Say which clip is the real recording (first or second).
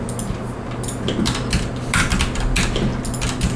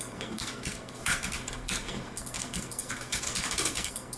first